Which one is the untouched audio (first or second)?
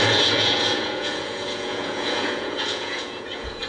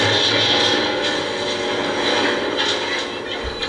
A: second